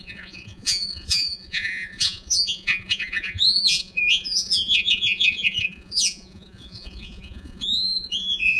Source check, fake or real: fake